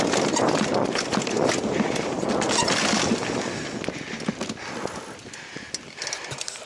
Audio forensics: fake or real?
real